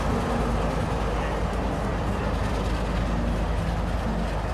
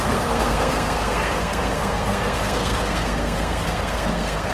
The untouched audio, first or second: first